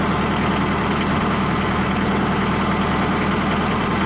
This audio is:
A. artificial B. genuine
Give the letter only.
B